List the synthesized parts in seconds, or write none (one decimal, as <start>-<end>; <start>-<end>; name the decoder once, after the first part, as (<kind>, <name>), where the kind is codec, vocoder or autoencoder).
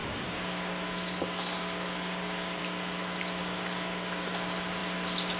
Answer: 0.0-2.6 (codec, DAC); 3.4-4.3